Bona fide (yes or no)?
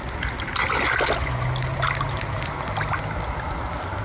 yes